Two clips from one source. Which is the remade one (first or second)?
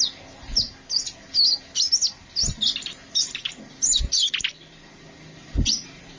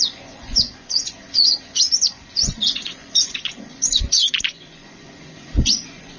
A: second